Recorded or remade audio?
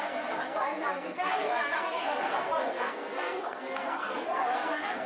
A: remade